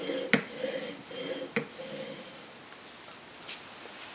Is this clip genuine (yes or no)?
yes